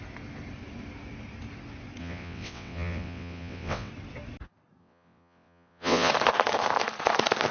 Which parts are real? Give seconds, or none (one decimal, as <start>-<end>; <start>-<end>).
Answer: 0.0-2.0; 3.9-4.8; 6.1-7.5